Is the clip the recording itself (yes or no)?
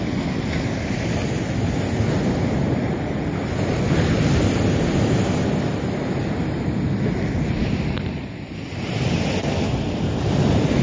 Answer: yes